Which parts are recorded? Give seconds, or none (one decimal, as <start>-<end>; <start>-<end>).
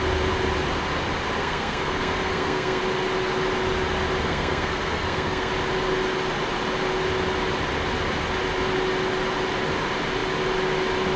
0.0-1.4; 2.8-4.2; 5.5-11.2